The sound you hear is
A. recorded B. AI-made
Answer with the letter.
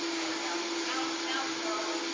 A